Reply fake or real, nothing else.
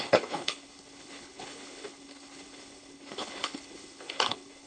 fake